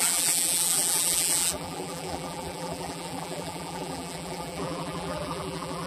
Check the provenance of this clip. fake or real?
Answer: fake